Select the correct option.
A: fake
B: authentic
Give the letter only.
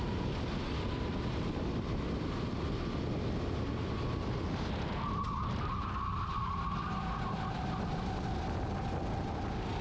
B